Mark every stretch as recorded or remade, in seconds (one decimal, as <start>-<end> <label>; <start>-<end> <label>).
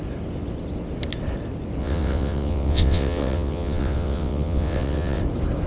0.0-1.8 recorded; 1.8-5.2 remade; 5.2-5.7 recorded